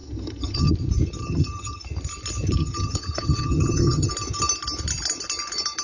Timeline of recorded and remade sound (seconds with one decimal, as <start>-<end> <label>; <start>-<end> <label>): 0.0-0.7 remade; 0.7-1.2 recorded; 1.2-1.8 remade; 1.8-2.6 recorded; 2.6-4.1 remade; 4.1-5.8 recorded